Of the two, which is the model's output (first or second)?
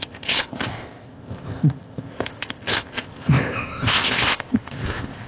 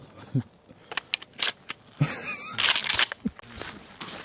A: first